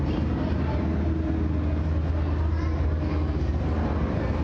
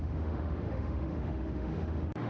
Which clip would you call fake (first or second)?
second